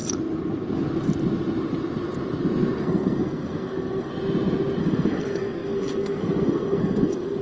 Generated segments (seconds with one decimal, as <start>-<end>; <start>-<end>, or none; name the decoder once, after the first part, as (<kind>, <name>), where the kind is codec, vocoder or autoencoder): 2.8-4.1 (codec, SNAC); 4.8-7.4